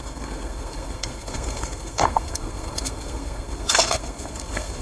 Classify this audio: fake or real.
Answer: fake